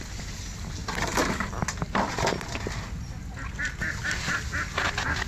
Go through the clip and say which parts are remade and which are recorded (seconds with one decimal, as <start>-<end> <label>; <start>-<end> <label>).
0.0-5.3 recorded